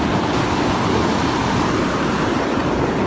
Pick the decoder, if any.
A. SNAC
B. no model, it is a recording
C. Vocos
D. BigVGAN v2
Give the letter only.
B